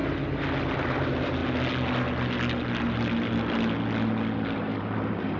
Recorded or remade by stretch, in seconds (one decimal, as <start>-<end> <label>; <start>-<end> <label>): 0.0-0.6 recorded; 0.6-1.4 remade; 1.4-4.6 recorded; 4.6-5.4 remade